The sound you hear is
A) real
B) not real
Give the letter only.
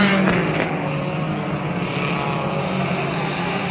A